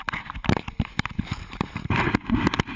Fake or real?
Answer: real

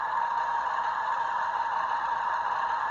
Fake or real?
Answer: real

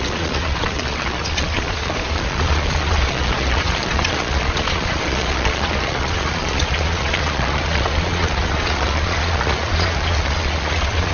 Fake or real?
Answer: fake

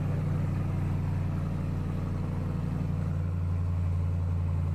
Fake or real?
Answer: real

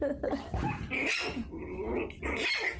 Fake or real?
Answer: real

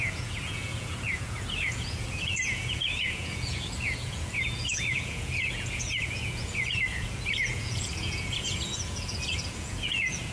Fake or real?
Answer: fake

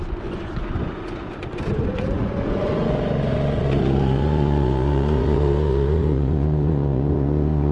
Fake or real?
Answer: fake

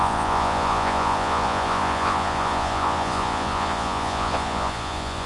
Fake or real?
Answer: fake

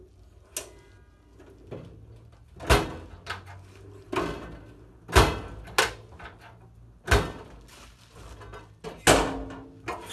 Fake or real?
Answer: real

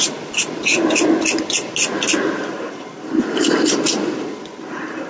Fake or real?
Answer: real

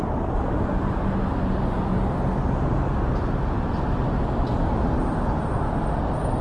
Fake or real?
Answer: real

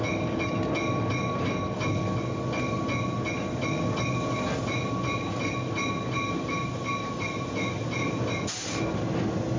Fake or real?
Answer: real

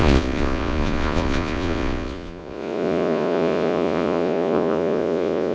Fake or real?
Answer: fake